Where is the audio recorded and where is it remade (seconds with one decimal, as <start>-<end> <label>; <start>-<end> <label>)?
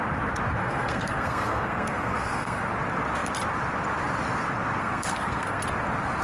0.0-0.6 recorded; 0.6-2.6 remade; 2.6-4.8 recorded; 4.8-5.6 remade; 5.6-6.2 recorded